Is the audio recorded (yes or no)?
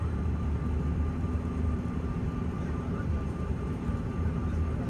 no